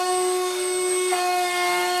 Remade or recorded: remade